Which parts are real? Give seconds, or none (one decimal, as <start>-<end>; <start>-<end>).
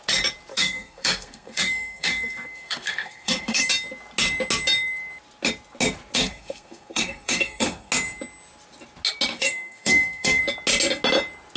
0.0-0.5; 3.7-6.2; 7.9-9.3; 10.4-11.6